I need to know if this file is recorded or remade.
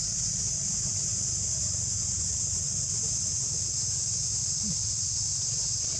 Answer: remade